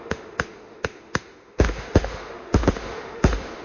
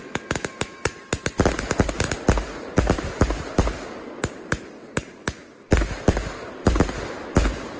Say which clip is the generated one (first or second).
first